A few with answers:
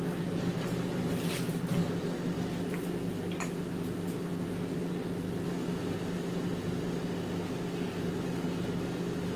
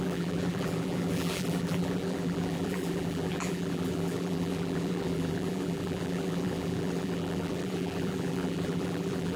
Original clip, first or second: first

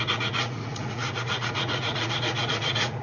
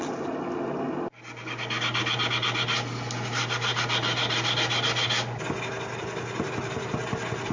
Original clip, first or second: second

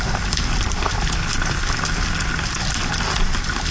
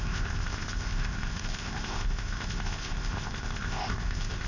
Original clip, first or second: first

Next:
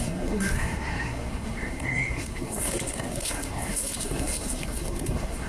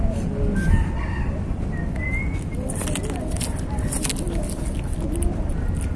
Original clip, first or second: second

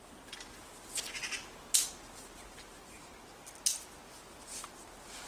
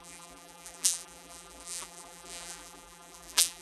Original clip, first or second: first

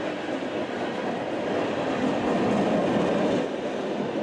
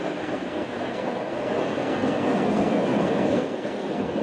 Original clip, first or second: first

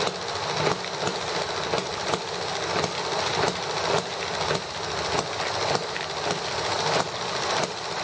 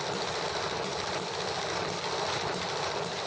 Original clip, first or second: first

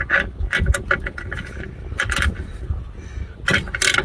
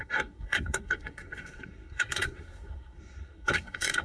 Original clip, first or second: first